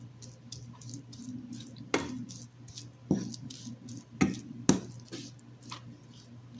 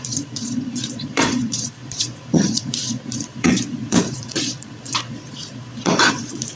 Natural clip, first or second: first